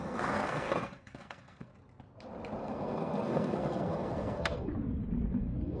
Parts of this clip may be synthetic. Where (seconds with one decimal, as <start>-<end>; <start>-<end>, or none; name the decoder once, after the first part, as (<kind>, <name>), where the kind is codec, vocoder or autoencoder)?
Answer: 0.0-1.7 (codec, SNAC); 2.6-4.7; 5.3-5.8